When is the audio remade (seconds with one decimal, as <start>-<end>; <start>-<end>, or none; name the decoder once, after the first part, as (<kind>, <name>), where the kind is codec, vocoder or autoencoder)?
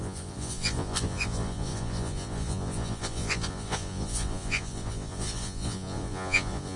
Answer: 0.0-6.8 (vocoder, Vocos)